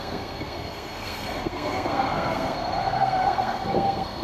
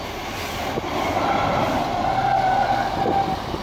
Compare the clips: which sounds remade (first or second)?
first